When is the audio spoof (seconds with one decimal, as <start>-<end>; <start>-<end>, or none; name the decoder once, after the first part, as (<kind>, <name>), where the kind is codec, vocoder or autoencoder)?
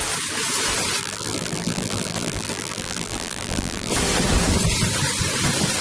1.0-3.9 (vocoder, BigVGAN v2)